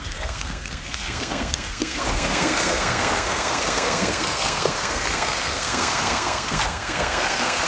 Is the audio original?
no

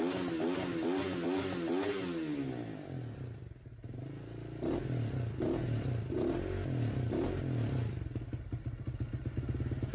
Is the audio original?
yes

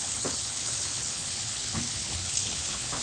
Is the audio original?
no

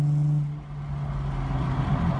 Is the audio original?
yes